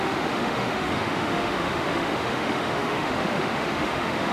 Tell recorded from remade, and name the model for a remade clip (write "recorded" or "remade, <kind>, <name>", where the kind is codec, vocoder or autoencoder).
remade, autoencoder, DAC-VAE